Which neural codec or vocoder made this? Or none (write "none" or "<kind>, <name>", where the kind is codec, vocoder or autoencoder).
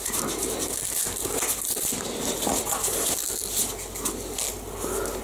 none